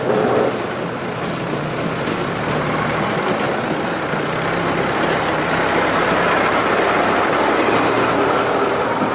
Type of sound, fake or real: real